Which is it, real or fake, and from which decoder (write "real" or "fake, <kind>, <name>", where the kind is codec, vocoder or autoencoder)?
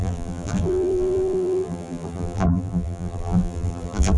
fake, vocoder, BigVGAN v2